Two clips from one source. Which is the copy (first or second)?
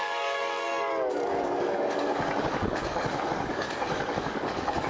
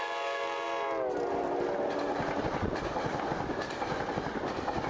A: first